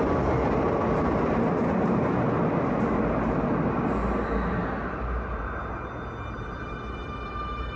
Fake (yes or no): no